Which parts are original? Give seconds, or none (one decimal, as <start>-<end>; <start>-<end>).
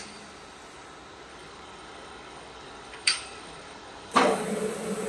0.0-1.3; 4.4-5.1